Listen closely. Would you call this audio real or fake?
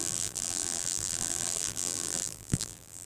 fake